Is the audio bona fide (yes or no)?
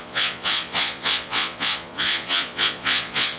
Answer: no